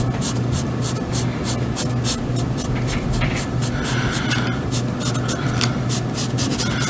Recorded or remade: recorded